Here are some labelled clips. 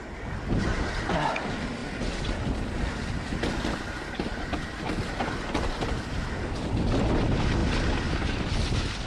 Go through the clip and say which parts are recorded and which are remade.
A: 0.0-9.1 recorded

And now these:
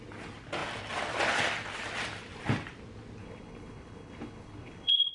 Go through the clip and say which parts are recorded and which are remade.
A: 0.0-3.2 recorded; 3.2-5.1 remade

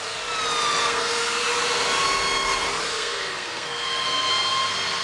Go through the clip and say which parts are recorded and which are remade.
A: 0.0-0.8 recorded; 0.8-1.4 remade; 1.4-2.9 recorded; 2.9-4.3 remade; 4.3-5.0 recorded

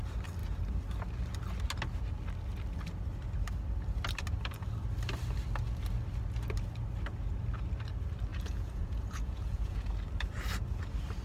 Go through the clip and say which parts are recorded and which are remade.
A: 0.0-8.3 recorded; 8.3-9.9 remade; 9.9-11.2 recorded

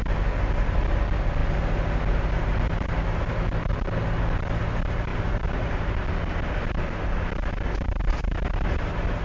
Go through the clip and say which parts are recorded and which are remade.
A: 0.0-9.2 recorded

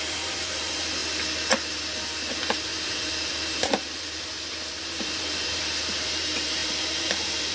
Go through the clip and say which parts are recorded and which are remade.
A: 0.0-1.0 remade; 1.0-2.3 recorded; 2.3-7.5 remade

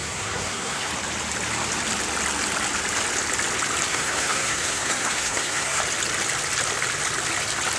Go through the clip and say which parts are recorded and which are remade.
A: 0.0-0.9 remade; 0.9-3.9 recorded; 3.9-5.8 remade; 5.8-7.8 recorded